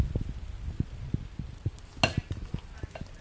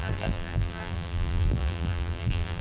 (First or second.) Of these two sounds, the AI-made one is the second